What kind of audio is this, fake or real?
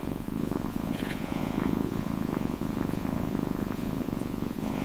fake